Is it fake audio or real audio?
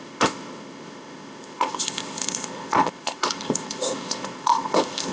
fake